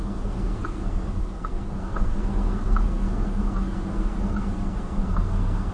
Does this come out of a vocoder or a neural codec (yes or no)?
yes